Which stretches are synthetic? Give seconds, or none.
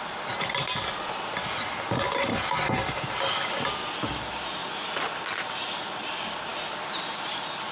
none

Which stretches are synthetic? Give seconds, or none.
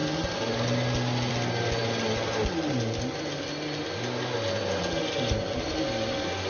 none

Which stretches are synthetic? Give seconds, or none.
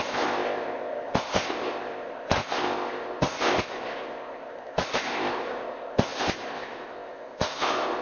0.0-8.0 (codec, ZipCodec)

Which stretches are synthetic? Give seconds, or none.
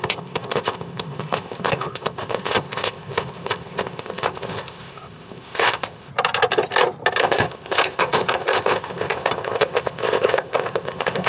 0.0-6.1 (codec, ZipCodec); 7.2-11.3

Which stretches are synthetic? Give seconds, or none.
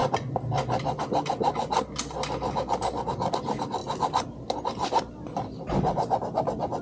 none